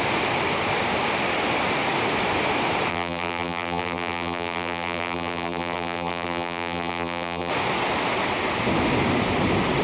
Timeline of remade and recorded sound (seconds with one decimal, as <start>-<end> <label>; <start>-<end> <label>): 0.0-2.9 recorded; 2.9-7.5 remade; 7.5-9.8 recorded